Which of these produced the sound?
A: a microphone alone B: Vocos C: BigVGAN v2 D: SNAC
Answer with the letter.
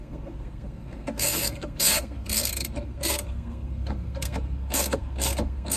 D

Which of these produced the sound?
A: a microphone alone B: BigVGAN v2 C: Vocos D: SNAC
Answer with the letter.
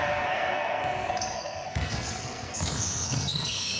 D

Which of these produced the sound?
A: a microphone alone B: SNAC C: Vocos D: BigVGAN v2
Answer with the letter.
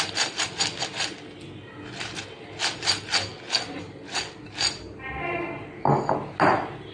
A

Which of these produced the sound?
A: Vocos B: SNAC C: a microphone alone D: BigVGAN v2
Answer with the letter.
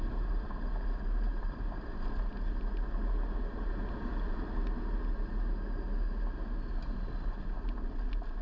C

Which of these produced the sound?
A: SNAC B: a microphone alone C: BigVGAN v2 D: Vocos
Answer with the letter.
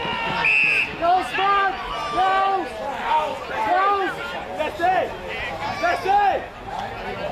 B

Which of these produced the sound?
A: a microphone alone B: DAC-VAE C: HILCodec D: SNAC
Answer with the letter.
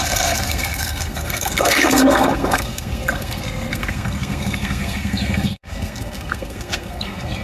D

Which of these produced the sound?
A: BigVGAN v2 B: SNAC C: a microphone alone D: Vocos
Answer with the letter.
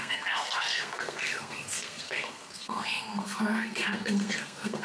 B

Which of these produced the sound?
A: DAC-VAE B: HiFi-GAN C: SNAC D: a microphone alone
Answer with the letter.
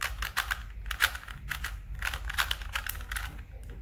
D